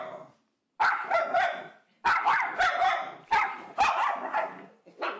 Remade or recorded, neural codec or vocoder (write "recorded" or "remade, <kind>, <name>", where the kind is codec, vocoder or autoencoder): recorded